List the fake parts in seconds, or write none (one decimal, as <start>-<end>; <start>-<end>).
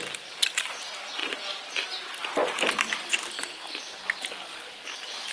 2.4-3.0